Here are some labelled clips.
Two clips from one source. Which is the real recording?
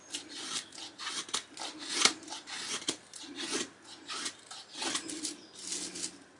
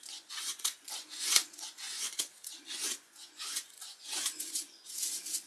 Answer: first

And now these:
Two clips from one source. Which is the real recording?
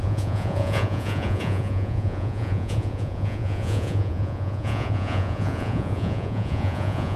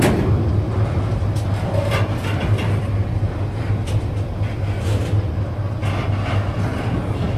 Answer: second